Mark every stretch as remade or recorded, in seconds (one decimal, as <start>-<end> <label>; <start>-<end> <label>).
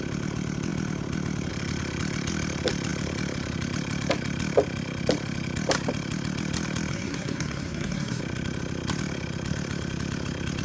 0.0-6.9 recorded; 6.9-8.2 remade; 8.2-10.6 recorded